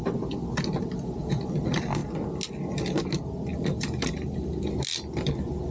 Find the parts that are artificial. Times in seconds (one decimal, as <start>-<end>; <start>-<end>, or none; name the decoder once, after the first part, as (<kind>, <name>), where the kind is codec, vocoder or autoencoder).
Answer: 3.5-4.5 (vocoder, BigVGAN v2)